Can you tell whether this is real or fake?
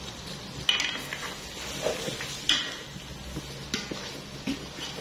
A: real